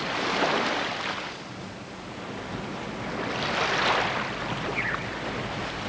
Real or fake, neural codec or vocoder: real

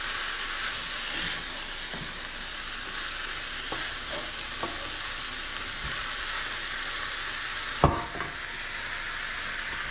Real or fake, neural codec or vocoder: real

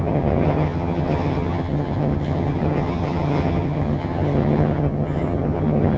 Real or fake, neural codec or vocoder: fake, vocoder, HiFi-GAN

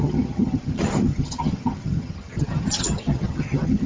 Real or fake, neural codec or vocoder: fake, vocoder, HiFi-GAN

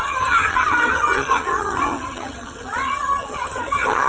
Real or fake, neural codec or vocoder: fake, vocoder, HiFi-GAN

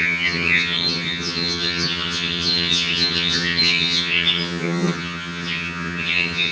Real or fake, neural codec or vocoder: fake, vocoder, HiFi-GAN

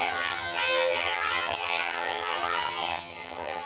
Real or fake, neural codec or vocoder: fake, vocoder, HiFi-GAN